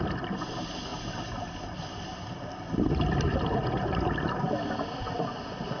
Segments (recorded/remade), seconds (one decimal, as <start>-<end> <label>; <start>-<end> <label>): 0.0-5.8 recorded